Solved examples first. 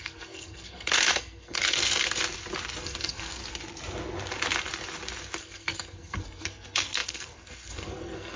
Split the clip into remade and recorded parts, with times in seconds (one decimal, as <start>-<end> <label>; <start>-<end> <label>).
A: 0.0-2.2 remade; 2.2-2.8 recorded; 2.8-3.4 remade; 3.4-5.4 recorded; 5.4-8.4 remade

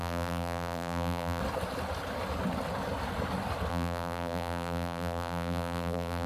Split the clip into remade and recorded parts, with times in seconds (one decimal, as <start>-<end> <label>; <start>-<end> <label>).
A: 0.0-1.4 remade; 1.4-3.7 recorded; 3.7-6.3 remade

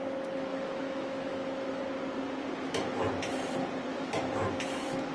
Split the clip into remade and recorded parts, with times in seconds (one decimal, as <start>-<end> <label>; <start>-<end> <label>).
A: 0.0-0.5 recorded; 0.5-1.8 remade; 1.8-3.9 recorded; 3.9-5.1 remade

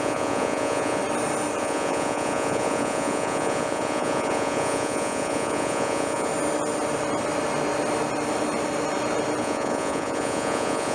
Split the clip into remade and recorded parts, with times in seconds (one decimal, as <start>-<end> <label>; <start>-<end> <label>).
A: 0.0-1.0 remade; 1.0-1.6 recorded; 1.6-6.3 remade; 6.3-9.4 recorded; 9.4-10.9 remade

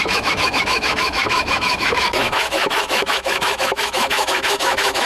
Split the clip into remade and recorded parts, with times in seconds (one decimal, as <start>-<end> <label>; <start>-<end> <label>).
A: 0.0-5.1 remade

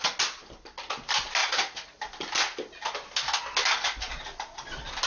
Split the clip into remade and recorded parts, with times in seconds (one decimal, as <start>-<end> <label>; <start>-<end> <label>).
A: 0.0-1.4 recorded; 1.4-2.0 remade; 2.0-5.1 recorded

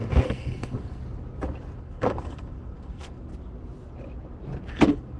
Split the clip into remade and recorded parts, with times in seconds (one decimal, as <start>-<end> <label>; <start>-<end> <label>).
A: 0.0-1.0 remade; 1.0-1.8 recorded; 1.8-3.3 remade; 3.3-4.7 recorded; 4.7-5.2 remade

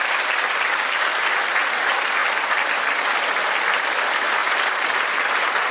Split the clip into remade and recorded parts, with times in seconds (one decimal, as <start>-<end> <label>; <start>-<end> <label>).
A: 0.0-1.1 remade; 1.1-1.7 recorded; 1.7-5.7 remade